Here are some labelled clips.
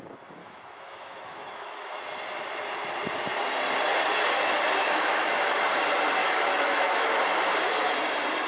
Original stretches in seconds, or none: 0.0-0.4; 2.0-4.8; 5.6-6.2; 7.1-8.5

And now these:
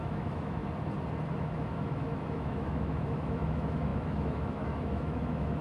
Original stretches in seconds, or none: 0.6-1.3